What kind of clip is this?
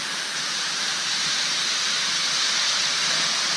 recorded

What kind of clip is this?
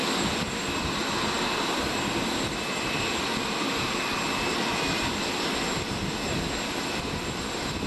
recorded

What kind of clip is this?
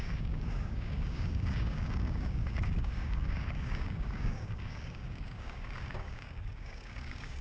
remade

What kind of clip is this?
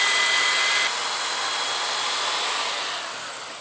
recorded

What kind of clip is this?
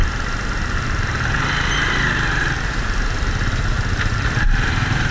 recorded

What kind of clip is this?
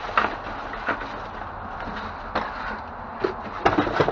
recorded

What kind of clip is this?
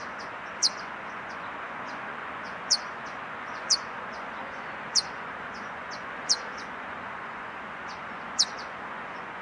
remade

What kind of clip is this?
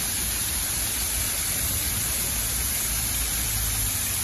remade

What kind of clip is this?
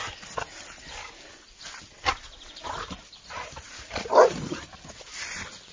recorded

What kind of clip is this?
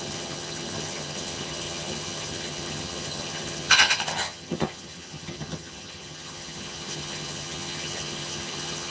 remade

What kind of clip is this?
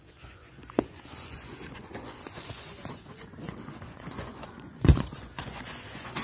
remade